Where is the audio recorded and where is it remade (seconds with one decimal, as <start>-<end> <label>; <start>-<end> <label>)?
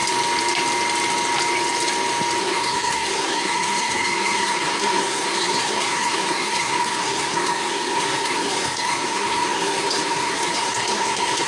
0.0-2.4 recorded; 2.4-11.5 remade